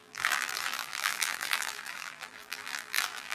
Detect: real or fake fake